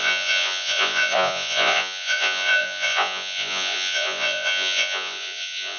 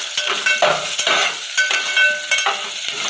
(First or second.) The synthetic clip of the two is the first